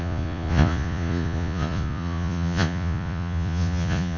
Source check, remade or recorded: remade